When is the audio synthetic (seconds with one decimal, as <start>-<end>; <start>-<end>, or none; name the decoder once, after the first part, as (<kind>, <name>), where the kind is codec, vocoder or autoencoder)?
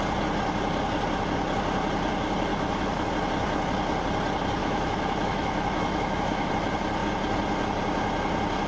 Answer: 2.5-3.1 (autoencoder, DAC-VAE); 4.6-6.5